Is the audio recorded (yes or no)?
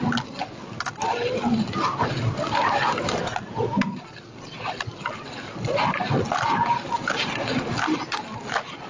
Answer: yes